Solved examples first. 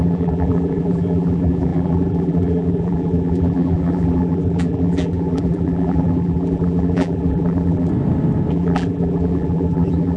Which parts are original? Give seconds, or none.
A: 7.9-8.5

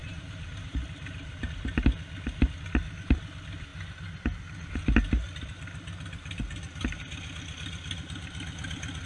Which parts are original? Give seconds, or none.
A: 1.4-9.1

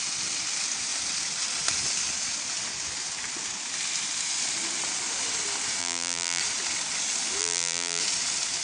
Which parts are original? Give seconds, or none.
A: 0.0-5.8; 6.4-7.4; 8.0-8.6